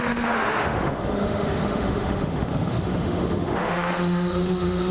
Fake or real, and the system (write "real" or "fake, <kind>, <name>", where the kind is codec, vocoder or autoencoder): fake, autoencoder, DAC-VAE